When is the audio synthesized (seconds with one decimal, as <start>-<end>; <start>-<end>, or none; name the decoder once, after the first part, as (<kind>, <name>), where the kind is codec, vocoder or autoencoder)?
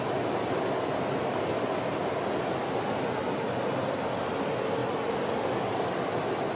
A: none